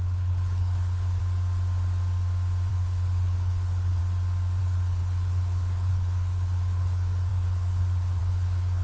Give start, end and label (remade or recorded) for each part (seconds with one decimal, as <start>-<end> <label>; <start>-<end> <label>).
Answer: 0.0-1.2 remade; 1.2-2.7 recorded; 2.7-4.0 remade; 4.0-4.6 recorded; 4.6-8.8 remade